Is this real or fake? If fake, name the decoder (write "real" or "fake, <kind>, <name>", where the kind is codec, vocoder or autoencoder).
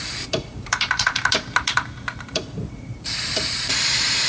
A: fake, vocoder, BigVGAN v2